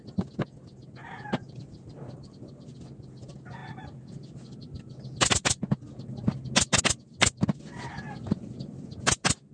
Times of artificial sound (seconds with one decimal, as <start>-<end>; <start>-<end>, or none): none